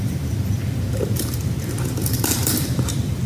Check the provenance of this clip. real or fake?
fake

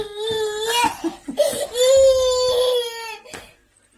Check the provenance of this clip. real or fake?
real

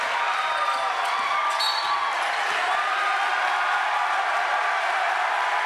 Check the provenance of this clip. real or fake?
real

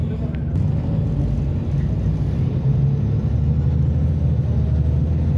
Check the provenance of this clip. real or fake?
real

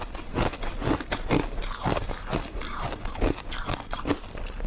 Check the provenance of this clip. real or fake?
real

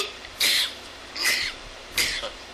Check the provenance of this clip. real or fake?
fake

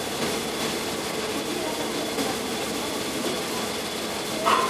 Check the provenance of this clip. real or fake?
real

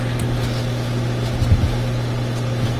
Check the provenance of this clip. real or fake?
real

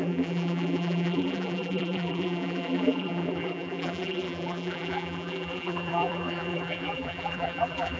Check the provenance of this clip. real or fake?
fake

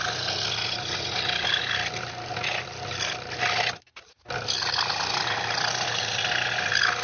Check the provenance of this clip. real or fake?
real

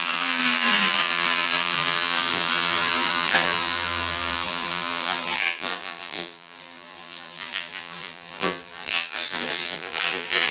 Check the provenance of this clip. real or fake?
fake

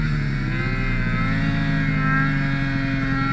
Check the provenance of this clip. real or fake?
real